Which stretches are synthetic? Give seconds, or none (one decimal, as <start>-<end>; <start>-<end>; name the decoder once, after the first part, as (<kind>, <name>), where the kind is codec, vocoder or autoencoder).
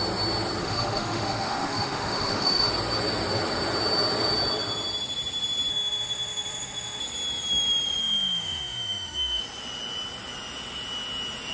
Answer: 0.6-2.7 (autoencoder, DAC-VAE); 5.7-7.0; 8.0-9.4